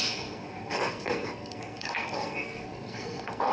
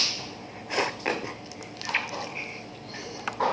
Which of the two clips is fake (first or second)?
first